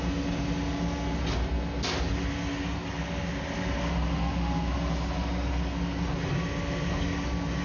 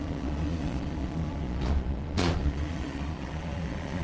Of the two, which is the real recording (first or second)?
first